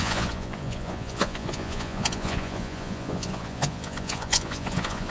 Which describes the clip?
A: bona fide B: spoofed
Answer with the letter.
B